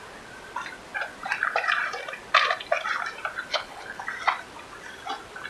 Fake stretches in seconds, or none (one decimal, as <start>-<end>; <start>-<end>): 3.5-4.0